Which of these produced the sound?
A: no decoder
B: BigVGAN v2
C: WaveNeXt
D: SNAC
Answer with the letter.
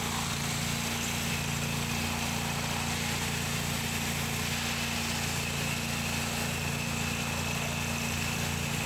A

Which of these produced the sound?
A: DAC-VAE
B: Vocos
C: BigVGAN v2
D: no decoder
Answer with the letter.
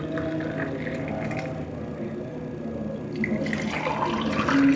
D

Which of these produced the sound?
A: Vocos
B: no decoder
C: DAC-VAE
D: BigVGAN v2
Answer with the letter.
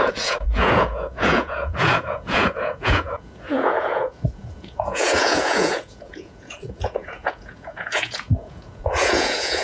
A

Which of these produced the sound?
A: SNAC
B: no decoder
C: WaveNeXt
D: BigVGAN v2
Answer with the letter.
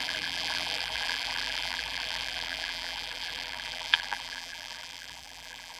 D